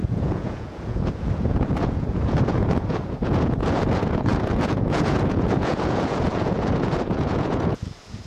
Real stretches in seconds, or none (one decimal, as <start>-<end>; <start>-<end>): none